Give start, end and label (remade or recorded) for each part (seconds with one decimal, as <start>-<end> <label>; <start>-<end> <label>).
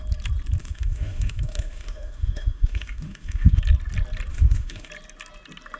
0.0-0.6 recorded; 0.6-3.6 remade; 3.6-4.3 recorded; 4.3-4.9 remade; 4.9-5.8 recorded